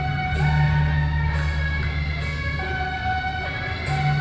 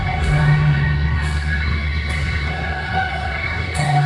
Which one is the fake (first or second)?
second